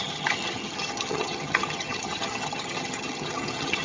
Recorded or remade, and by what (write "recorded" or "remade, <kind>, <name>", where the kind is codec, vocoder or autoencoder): remade, vocoder, HiFi-GAN